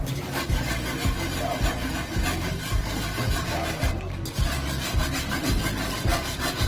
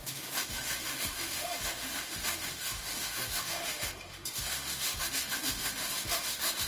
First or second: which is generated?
second